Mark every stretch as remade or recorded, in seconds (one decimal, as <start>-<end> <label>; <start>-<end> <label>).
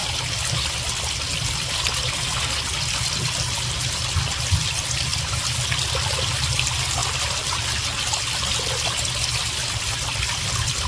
0.0-10.9 recorded